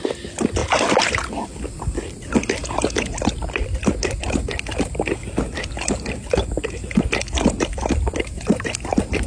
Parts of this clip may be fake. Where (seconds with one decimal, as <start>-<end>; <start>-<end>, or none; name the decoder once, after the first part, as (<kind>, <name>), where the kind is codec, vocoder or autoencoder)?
none